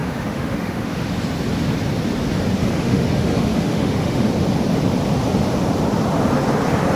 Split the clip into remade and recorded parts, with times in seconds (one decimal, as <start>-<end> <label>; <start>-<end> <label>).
0.0-1.1 remade; 1.1-2.6 recorded; 2.6-4.3 remade; 4.3-7.0 recorded